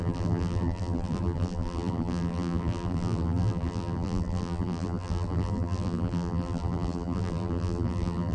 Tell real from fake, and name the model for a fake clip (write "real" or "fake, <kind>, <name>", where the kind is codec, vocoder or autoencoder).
fake, vocoder, BigVGAN v2